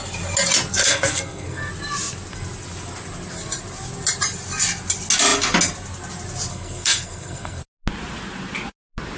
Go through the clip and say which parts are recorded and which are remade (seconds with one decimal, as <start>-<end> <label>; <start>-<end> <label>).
0.0-0.8 recorded; 0.8-1.7 remade; 1.7-6.5 recorded; 6.5-7.6 remade; 7.6-9.2 recorded